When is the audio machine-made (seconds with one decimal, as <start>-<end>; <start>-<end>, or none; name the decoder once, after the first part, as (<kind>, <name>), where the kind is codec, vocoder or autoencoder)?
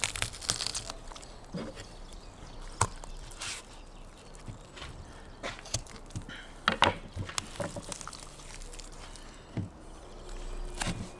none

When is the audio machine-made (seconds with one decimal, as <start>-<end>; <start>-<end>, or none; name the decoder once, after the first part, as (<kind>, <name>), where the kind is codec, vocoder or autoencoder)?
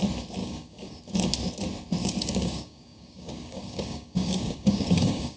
0.4-1.0 (codec, DAC); 2.0-5.4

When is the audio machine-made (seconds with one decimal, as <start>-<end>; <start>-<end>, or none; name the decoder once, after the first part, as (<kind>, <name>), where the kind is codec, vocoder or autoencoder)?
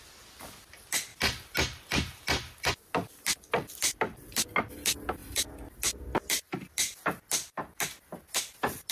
none